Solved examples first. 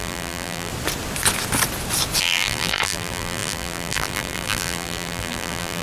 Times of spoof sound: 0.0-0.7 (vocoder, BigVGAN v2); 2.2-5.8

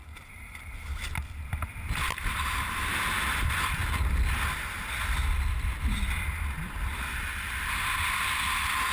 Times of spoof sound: 0.0-0.7 (vocoder, BigVGAN v2); 2.1-2.9

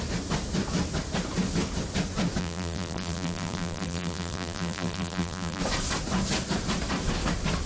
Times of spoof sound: 2.4-5.6 (vocoder, BigVGAN v2)

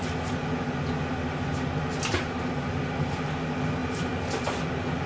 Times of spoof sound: 3.8-4.6 (vocoder, BigVGAN v2)

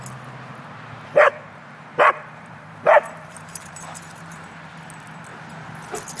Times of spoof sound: 1.3-4.7 (vocoder, BigVGAN v2)

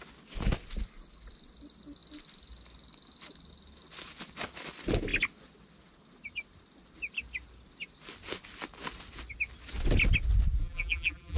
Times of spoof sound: 10.6-11.4 (vocoder, BigVGAN v2)